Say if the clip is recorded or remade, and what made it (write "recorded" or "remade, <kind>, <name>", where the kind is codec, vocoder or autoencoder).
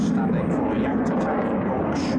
recorded